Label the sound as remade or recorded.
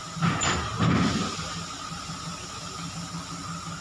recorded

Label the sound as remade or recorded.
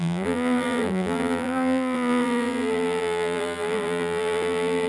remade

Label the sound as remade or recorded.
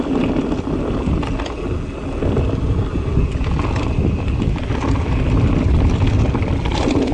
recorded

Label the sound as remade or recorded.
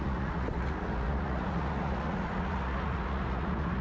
remade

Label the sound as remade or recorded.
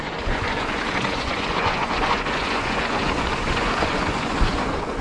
remade